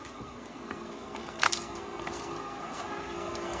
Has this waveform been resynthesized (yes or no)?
yes